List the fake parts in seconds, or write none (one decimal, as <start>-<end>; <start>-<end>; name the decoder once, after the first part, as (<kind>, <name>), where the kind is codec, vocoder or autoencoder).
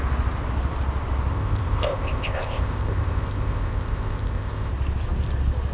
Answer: 1.3-4.7 (codec, ZipCodec)